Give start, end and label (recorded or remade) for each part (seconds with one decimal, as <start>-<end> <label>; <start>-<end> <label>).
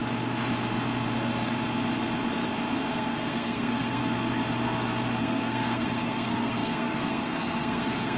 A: 0.0-2.9 recorded; 2.9-4.0 remade; 4.0-5.2 recorded; 5.2-8.2 remade